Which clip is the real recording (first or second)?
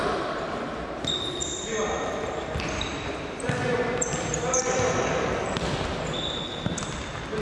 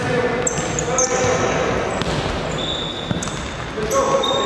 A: second